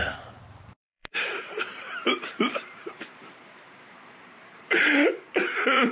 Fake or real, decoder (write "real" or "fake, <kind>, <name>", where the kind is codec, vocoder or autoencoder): fake, vocoder, BigVGAN v2